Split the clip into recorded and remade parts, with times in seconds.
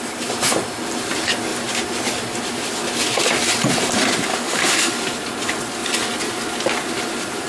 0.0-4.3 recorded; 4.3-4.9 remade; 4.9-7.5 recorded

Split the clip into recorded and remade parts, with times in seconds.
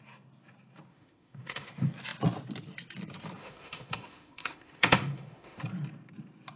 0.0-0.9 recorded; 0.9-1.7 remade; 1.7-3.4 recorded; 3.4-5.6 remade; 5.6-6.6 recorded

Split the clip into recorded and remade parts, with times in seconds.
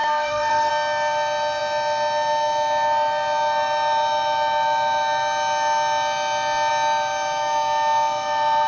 0.0-0.7 remade; 0.7-8.7 recorded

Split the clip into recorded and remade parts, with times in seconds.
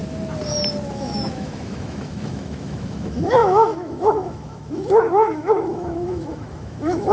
0.0-0.9 recorded; 0.9-7.1 remade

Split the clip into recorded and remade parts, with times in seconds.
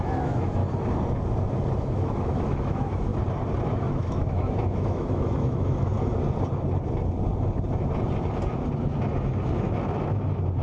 0.0-0.6 remade; 0.6-1.8 recorded; 1.8-3.1 remade; 3.1-3.7 recorded; 3.7-5.9 remade; 5.9-10.6 recorded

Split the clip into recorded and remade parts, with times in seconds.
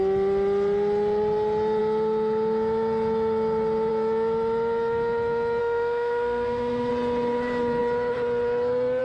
0.0-5.6 recorded; 5.6-6.9 remade; 6.9-9.0 recorded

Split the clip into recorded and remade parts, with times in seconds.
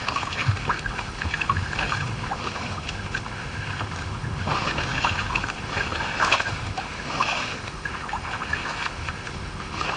0.0-10.0 remade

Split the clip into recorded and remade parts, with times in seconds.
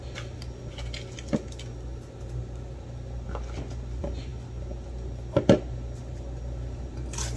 0.0-7.4 recorded